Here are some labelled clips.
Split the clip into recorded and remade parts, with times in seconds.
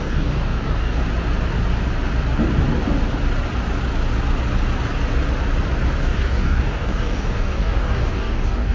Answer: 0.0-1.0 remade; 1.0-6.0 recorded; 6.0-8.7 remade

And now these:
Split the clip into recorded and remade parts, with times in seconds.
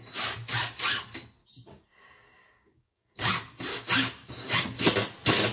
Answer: 0.0-1.4 recorded; 1.4-3.3 remade; 3.3-3.7 recorded; 3.7-4.6 remade; 4.6-5.5 recorded